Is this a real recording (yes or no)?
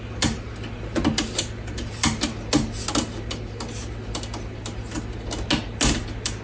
yes